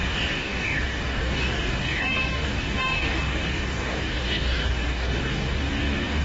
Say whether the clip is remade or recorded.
remade